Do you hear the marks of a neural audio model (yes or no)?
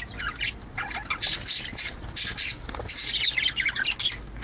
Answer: no